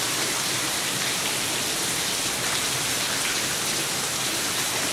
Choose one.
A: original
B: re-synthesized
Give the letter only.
A